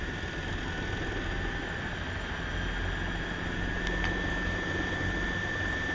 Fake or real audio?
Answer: real